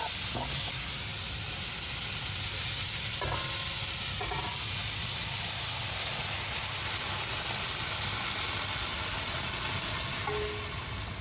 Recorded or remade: recorded